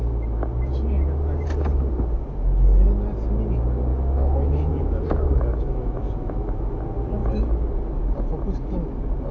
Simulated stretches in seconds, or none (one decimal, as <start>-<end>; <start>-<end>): 3.9-6.8